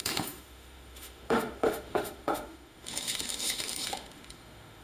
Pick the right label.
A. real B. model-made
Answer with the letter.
B